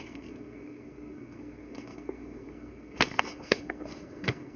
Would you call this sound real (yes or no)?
no